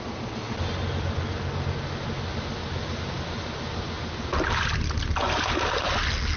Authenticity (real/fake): real